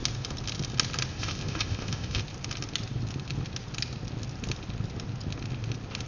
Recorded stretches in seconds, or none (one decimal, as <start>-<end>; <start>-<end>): 0.0-1.1; 2.2-6.1